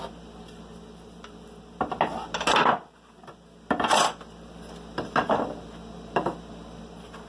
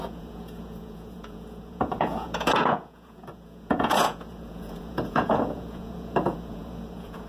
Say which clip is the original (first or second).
first